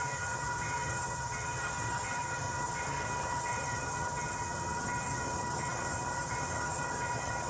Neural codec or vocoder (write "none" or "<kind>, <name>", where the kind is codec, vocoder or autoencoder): vocoder, HiFi-GAN